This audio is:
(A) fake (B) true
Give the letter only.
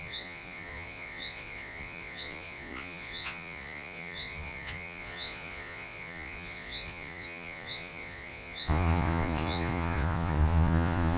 A